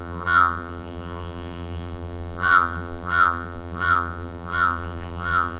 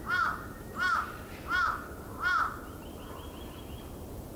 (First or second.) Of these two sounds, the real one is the second